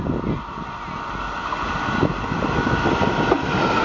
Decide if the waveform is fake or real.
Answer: real